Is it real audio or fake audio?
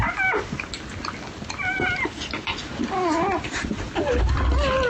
real